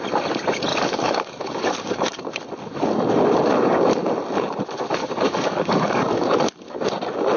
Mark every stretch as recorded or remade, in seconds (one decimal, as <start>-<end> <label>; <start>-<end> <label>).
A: 0.0-0.7 recorded; 0.7-2.2 remade; 2.2-5.0 recorded; 5.0-6.5 remade; 6.5-7.4 recorded